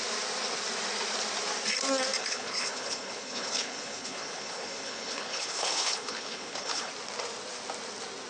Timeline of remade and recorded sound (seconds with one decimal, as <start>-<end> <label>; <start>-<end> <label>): 0.0-2.2 recorded; 2.2-6.9 remade; 6.9-8.3 recorded